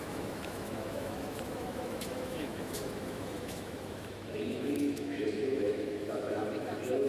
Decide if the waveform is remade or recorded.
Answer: remade